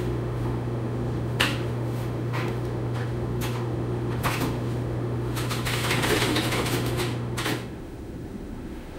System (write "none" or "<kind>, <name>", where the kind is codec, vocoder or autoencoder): autoencoder, DAC-VAE